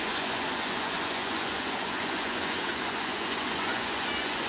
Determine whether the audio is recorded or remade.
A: remade